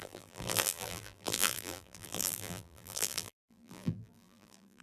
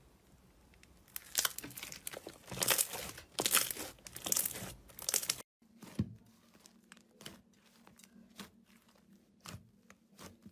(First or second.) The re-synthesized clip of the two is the first